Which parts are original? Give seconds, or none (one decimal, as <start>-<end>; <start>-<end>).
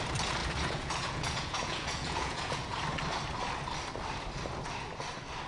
0.0-0.4; 2.8-5.5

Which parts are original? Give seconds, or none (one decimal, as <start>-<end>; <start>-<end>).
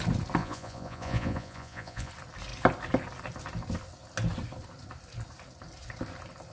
0.0-0.4; 2.1-6.5